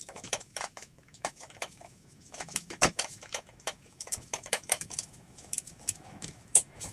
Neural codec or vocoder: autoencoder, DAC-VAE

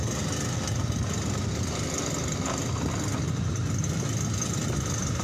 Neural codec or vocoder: none